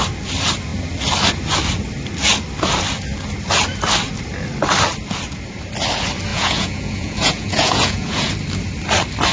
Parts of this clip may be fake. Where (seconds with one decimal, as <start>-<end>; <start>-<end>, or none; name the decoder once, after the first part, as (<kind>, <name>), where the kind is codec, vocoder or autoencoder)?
6.3-8.3 (vocoder, Vocos)

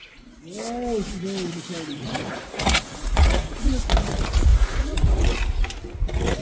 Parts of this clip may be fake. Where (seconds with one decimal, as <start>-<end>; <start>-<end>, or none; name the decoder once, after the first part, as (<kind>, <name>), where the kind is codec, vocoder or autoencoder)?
1.9-3.7 (vocoder, Vocos); 4.5-5.2

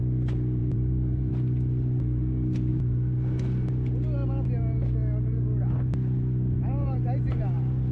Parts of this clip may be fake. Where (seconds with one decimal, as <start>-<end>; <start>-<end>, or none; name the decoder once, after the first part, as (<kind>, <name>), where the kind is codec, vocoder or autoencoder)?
0.6-1.3 (vocoder, Vocos)

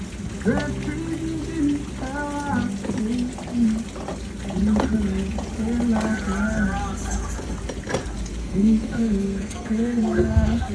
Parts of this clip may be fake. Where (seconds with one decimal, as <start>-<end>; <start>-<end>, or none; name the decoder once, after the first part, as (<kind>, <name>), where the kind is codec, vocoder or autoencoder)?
8.4-10.7 (codec, SNAC)

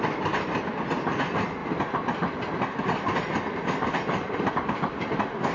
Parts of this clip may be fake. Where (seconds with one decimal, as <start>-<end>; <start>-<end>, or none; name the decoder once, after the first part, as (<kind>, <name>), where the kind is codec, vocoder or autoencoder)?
none